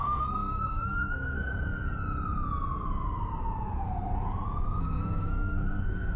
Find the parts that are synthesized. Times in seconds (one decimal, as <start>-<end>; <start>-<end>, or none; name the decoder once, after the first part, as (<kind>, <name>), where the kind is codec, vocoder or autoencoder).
0.0-1.5 (codec, SNAC); 4.8-6.2